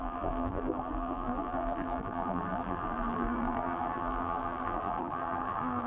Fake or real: fake